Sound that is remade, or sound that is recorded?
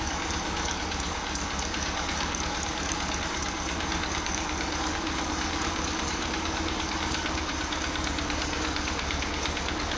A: remade